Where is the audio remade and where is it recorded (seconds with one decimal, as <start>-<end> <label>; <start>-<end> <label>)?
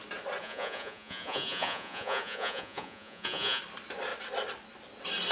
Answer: 0.0-0.4 recorded; 0.4-3.6 remade; 3.6-5.3 recorded